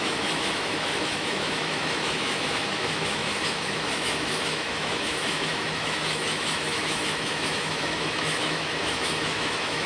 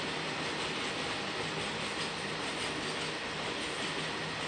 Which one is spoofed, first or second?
first